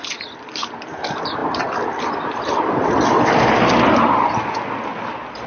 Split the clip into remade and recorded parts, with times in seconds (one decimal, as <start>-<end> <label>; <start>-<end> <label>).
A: 0.0-5.5 recorded